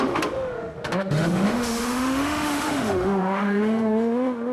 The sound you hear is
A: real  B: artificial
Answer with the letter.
B